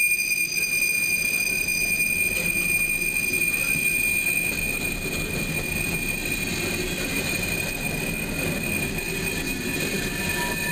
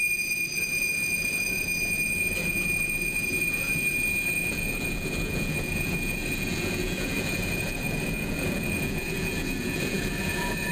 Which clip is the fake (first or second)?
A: second